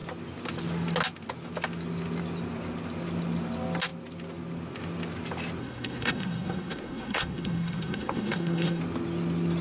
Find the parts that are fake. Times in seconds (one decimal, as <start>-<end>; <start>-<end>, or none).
5.6-8.8